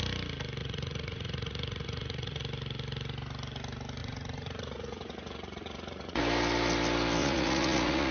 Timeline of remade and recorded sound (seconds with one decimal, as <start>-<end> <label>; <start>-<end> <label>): 0.0-0.6 recorded; 0.6-2.4 remade; 2.4-4.0 recorded; 4.0-6.2 remade; 6.2-7.2 recorded; 7.2-8.1 remade